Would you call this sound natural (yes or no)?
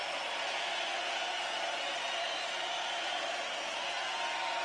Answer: yes